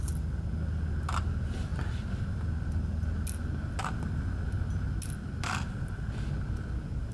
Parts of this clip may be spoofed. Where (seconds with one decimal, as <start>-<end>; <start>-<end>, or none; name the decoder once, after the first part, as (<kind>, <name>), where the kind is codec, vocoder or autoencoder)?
none